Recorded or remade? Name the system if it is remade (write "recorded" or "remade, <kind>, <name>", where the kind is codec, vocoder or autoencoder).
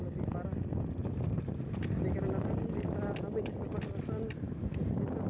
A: recorded